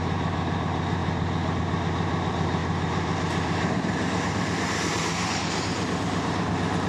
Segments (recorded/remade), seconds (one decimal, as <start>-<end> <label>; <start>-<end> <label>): 0.0-6.9 remade